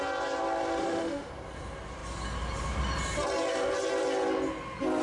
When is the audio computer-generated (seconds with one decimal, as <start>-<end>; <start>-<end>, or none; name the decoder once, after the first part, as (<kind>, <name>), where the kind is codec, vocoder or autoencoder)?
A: 0.8-1.3 (autoencoder, DAC-VAE)